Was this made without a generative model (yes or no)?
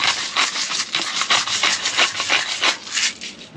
yes